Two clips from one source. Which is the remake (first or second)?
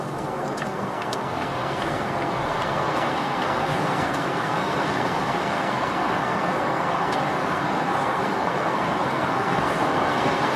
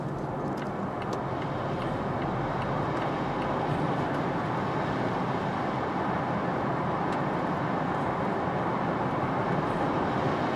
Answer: first